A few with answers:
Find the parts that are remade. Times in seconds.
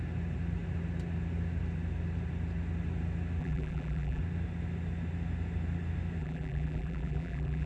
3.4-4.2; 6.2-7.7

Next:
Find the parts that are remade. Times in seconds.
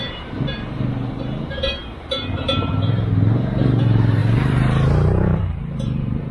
0.0-6.3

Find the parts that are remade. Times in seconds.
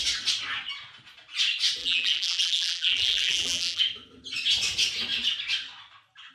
1.8-3.8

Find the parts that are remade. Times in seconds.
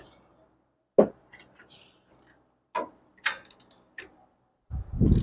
none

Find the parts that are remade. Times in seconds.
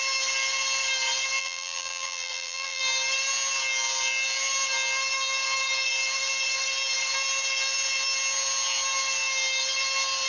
1.4-2.8